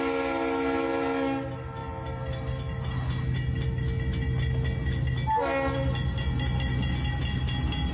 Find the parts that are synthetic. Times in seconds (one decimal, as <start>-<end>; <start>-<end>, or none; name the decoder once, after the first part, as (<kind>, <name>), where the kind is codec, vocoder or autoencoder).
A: none